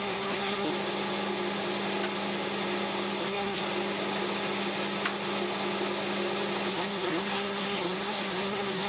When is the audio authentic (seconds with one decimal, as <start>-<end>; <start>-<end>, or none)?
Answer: 0.7-3.2; 3.6-6.7